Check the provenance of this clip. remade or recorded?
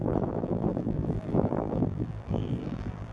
remade